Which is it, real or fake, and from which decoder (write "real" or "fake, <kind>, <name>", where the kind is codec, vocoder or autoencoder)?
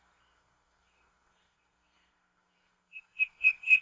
fake, codec, SNAC